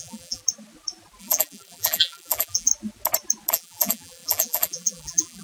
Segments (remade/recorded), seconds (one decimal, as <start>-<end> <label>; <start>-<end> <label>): 0.0-0.4 remade; 0.4-1.2 recorded; 1.2-2.7 remade; 2.7-3.5 recorded; 3.5-5.4 remade